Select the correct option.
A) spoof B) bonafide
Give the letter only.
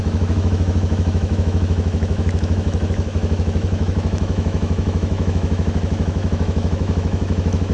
A